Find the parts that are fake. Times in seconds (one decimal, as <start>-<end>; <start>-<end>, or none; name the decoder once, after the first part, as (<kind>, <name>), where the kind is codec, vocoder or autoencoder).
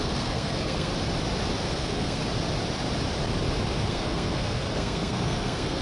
0.0-0.9 (codec, SNAC); 1.7-2.2; 3.9-5.8